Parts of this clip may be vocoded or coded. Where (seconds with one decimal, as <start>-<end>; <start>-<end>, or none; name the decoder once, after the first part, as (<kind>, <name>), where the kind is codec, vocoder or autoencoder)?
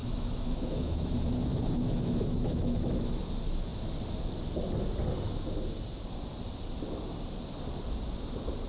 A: 0.0-1.1 (autoencoder, DAC-VAE); 1.5-3.3